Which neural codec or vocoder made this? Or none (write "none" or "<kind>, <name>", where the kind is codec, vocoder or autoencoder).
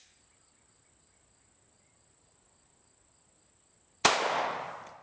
none